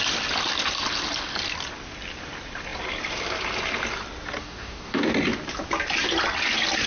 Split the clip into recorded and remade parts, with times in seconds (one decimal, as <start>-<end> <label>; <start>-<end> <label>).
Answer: 0.0-4.4 recorded; 4.4-5.0 remade; 5.0-6.9 recorded